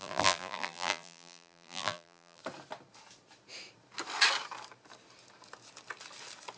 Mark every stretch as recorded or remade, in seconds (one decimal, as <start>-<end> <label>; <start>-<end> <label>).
0.0-2.4 remade; 2.4-6.6 recorded